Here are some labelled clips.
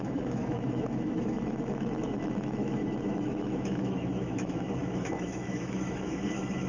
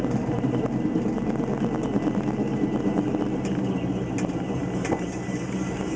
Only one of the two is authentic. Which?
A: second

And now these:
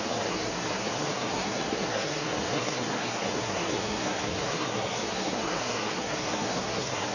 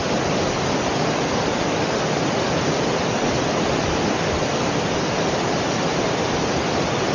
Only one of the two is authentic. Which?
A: second